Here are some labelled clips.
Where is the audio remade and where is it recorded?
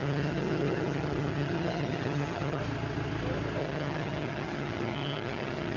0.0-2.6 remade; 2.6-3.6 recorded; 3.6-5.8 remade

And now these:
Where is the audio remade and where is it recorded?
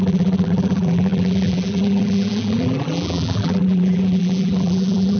0.0-5.2 remade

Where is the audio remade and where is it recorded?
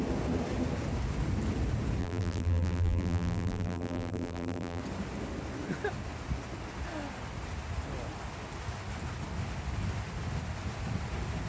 0.0-2.0 recorded; 2.0-4.8 remade; 4.8-11.5 recorded